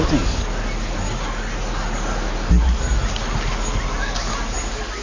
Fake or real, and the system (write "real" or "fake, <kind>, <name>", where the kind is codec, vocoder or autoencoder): real